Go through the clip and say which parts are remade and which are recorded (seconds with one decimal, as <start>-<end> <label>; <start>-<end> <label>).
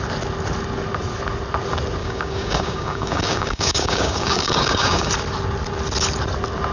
0.0-2.0 recorded; 2.0-5.1 remade; 5.1-6.7 recorded